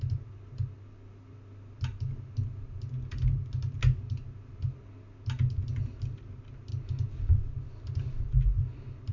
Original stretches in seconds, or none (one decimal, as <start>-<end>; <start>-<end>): 0.0-9.1